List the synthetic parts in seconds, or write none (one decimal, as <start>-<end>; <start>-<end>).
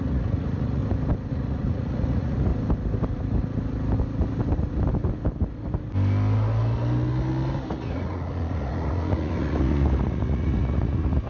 0.0-0.8; 1.3-2.5; 7.7-11.3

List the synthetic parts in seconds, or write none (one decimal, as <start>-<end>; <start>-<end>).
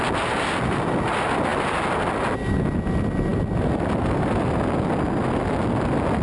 none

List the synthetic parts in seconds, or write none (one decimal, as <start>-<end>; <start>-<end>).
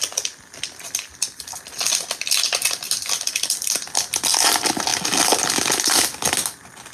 none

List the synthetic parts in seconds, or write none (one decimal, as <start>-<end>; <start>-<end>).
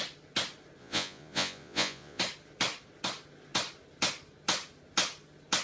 0.8-2.2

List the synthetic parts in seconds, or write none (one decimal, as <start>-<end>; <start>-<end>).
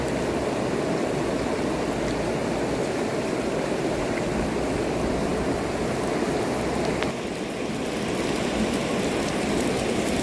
none